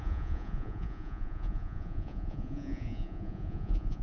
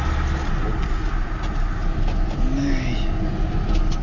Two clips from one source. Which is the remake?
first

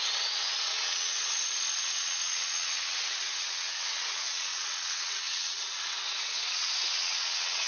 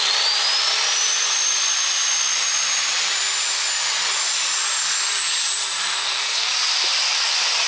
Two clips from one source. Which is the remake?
first